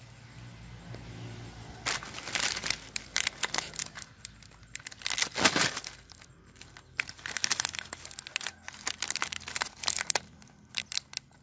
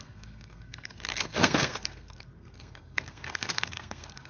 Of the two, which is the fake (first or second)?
second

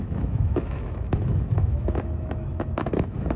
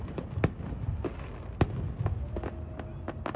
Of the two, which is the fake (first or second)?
first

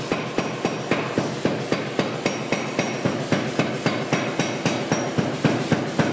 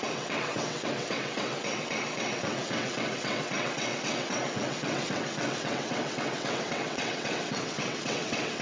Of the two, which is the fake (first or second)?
second